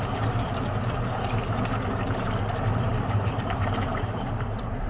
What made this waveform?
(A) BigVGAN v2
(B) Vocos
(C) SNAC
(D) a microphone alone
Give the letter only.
A